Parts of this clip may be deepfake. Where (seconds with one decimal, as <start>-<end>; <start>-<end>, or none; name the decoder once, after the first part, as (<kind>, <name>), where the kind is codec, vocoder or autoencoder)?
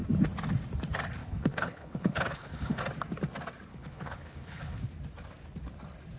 1.2-2.8 (codec, HILCodec); 3.7-4.8